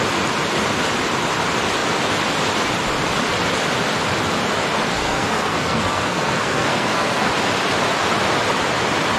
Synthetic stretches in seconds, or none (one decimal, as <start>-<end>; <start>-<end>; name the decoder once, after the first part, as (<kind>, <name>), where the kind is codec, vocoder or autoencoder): 4.9-7.3 (codec, SNAC)